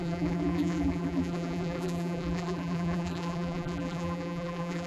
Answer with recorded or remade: remade